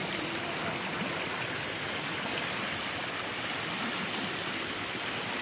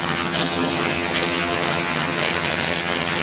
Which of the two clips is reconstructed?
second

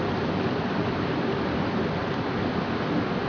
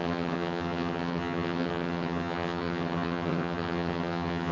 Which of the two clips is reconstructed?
second